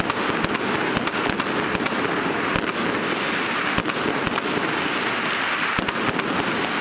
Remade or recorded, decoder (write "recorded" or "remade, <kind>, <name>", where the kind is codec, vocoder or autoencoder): recorded